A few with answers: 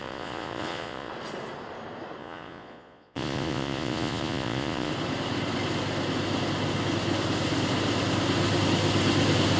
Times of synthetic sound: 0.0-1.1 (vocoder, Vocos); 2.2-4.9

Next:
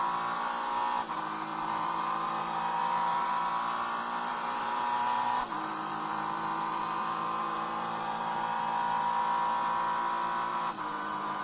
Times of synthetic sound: 1.5-3.5 (vocoder, BigVGAN v2); 4.3-8.4; 10.5-11.4

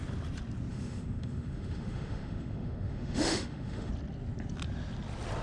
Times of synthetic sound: 0.7-3.9 (autoencoder, DAC-VAE)

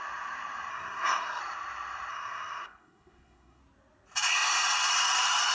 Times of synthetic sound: 0.7-1.4 (codec, SNAC); 2.1-3.6

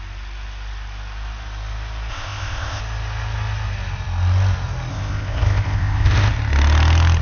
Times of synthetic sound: 2.1-2.8 (codec, ZipCodec); 4.9-6.3

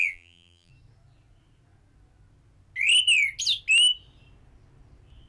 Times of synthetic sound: 0.0-0.7 (vocoder, BigVGAN v2)

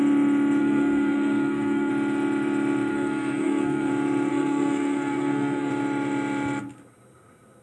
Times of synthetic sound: 0.6-1.9 (codec, SNAC); 2.9-3.9; 4.3-5.7

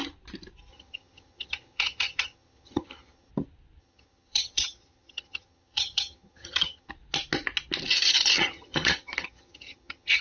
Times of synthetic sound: 0.7-3.3 (vocoder, HiFi-GAN); 3.8-6.9; 7.9-10.2